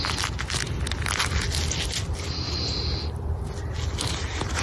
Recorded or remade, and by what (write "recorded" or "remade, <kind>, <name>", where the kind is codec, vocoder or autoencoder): recorded